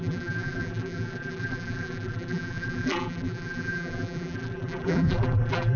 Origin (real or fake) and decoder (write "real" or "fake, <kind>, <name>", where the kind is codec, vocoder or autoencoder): fake, vocoder, BigVGAN v2